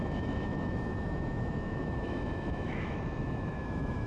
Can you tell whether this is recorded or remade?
remade